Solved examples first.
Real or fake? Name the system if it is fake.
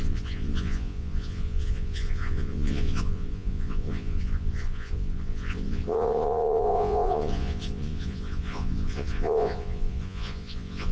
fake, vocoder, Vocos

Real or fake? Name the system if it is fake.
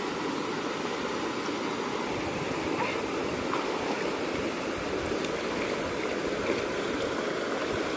real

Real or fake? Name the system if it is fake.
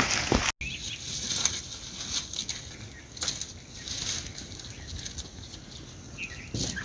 real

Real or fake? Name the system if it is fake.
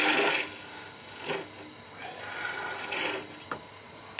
real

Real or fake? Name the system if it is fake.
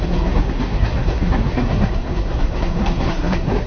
fake, codec, SNAC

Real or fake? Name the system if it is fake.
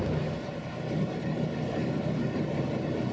real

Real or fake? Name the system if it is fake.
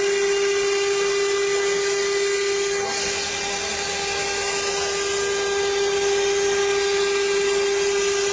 real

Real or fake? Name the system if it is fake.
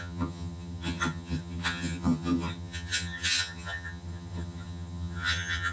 fake, vocoder, HiFi-GAN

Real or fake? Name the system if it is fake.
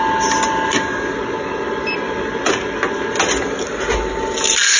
real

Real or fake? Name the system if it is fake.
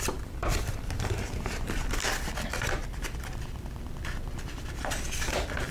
fake, vocoder, BigVGAN v2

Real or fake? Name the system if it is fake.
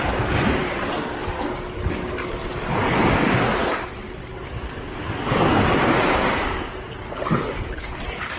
real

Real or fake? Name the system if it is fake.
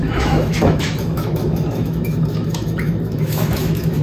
fake, autoencoder, DAC-VAE